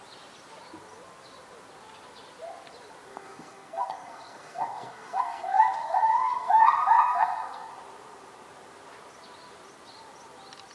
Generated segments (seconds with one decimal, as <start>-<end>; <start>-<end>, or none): 3.1-7.7